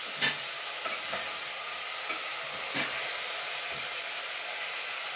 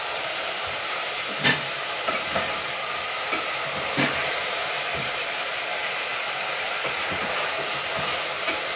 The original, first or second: first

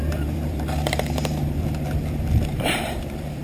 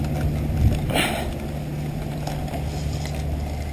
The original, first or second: second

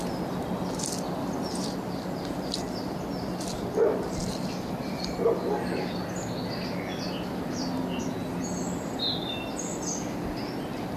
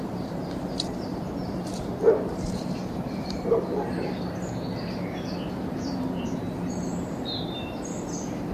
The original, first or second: first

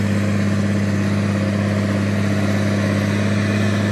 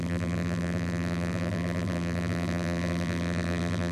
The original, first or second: first